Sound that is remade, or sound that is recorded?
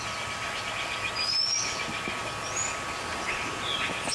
recorded